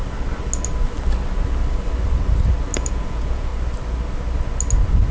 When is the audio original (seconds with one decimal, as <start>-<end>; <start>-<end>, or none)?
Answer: 0.0-2.9; 3.5-5.1